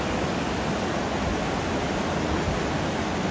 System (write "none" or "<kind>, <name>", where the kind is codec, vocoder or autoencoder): none